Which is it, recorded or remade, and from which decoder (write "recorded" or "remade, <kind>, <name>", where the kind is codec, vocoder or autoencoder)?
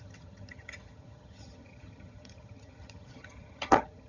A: remade, vocoder, HiFi-GAN